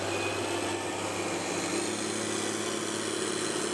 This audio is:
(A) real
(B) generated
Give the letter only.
A